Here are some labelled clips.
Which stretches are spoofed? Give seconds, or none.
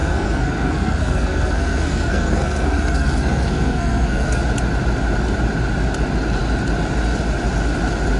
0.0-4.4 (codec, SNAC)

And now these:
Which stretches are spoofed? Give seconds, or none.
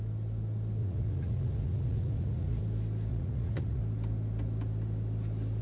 0.8-2.6 (vocoder, Vocos); 3.1-3.8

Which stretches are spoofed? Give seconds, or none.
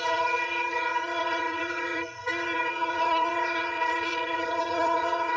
0.0-5.4 (vocoder, HiFi-GAN)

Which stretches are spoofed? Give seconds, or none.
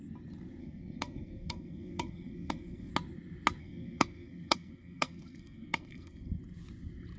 0.6-2.9 (codec, SNAC); 3.6-6.4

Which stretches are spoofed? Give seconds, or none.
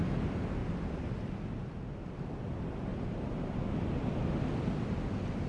0.6-2.1 (vocoder, BigVGAN v2); 2.9-5.5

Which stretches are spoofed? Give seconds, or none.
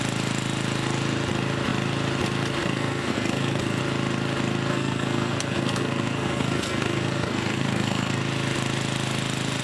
2.6-3.8 (codec, SNAC); 4.7-8.2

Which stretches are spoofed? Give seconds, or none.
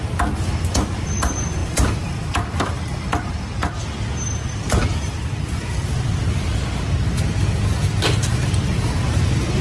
none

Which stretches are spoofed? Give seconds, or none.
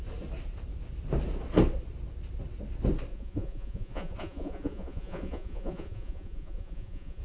3.1-7.2 (vocoder, Vocos)